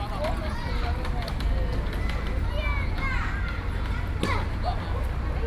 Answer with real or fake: real